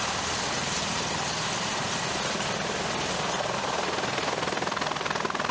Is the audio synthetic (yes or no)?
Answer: no